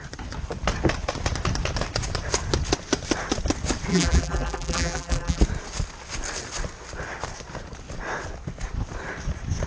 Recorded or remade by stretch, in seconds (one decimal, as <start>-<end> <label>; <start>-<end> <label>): 0.0-3.9 recorded; 3.9-5.4 remade; 5.4-9.7 recorded